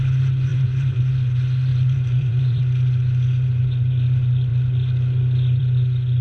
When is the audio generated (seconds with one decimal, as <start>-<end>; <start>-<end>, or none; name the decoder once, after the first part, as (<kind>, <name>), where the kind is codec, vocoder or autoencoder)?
0.5-1.0 (vocoder, BigVGAN v2); 1.7-2.6